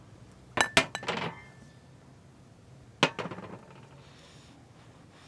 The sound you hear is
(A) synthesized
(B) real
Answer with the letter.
B